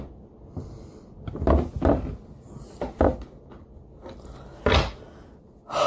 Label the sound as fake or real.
real